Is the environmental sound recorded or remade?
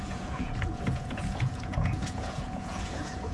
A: remade